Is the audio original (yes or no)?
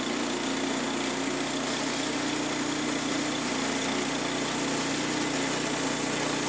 yes